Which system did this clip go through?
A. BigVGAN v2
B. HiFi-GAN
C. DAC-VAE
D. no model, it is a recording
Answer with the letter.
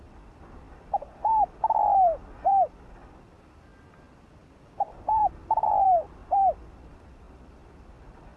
A